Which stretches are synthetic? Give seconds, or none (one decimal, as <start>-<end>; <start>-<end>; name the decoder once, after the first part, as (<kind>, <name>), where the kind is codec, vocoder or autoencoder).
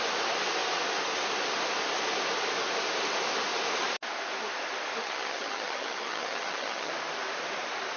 5.0-6.9 (vocoder, HiFi-GAN)